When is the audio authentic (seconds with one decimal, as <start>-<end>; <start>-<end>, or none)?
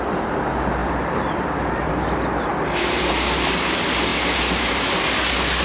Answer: 0.0-0.8; 1.9-2.5; 3.1-5.6